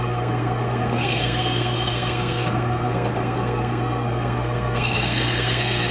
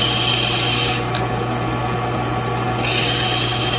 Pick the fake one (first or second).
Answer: first